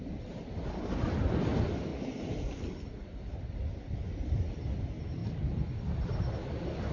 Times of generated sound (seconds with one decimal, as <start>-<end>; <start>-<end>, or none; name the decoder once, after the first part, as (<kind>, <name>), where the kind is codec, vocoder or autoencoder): none